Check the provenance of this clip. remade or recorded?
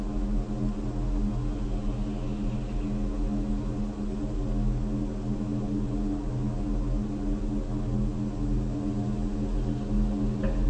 recorded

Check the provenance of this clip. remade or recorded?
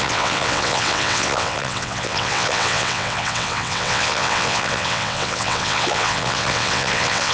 remade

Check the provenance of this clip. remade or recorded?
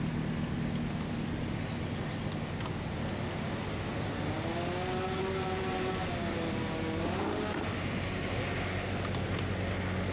recorded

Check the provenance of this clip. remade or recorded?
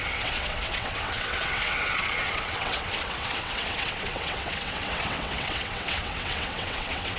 remade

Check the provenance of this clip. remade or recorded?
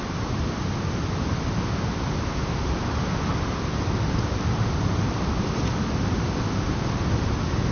recorded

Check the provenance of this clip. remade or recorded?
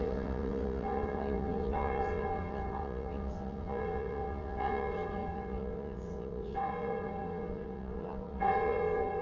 remade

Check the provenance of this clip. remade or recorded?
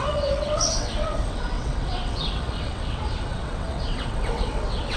remade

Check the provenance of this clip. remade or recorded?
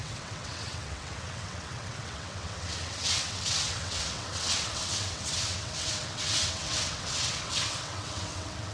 remade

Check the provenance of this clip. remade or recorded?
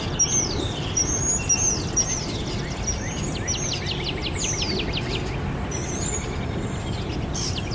recorded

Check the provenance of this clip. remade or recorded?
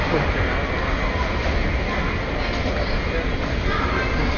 recorded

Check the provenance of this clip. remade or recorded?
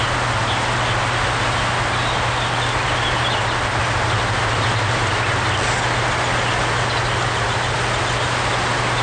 recorded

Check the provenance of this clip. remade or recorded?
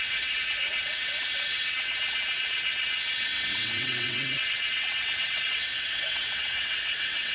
remade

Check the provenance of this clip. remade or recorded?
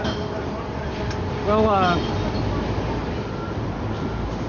recorded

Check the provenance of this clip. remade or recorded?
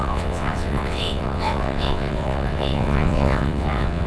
remade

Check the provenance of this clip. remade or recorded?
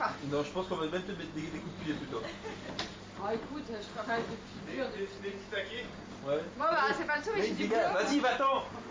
recorded